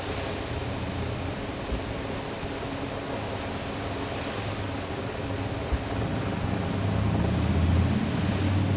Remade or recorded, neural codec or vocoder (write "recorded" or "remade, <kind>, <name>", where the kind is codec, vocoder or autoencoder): recorded